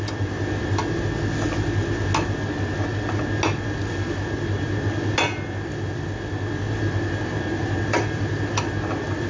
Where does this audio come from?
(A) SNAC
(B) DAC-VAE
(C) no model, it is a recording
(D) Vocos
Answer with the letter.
C